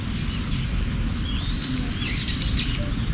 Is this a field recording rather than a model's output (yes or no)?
yes